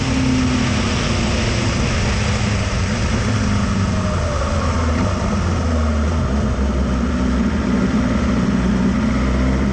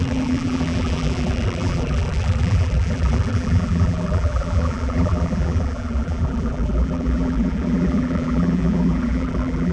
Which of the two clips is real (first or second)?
first